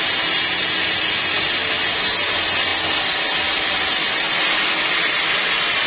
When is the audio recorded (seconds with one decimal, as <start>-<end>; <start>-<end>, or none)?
0.0-5.9